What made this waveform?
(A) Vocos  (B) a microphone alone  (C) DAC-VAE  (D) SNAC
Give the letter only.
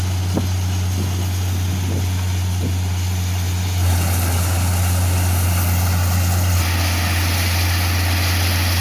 B